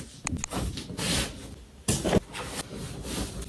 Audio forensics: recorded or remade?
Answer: recorded